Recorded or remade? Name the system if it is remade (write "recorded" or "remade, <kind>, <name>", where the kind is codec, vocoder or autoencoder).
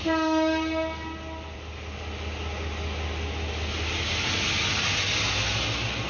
recorded